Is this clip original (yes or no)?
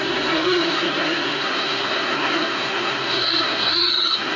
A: no